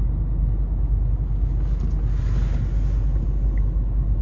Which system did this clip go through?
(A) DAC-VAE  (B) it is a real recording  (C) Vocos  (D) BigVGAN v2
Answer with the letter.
B